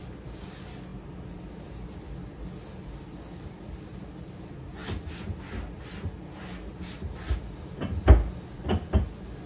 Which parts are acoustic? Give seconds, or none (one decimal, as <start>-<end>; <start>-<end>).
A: 0.0-4.8; 5.4-9.5